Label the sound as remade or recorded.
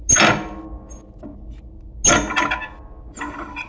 recorded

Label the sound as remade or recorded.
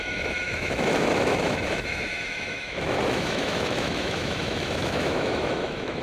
remade